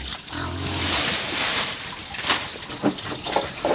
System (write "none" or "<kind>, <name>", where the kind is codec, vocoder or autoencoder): vocoder, BigVGAN v2